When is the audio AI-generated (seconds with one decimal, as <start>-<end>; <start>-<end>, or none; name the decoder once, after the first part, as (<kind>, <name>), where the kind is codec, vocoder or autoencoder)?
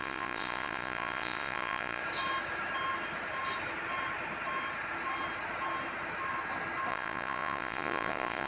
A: 0.0-2.0 (vocoder, Vocos); 6.9-8.5